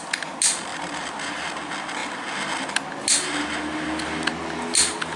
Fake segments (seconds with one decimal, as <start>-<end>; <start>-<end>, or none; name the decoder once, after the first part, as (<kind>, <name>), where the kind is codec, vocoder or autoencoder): 0.7-1.4 (vocoder, BigVGAN v2)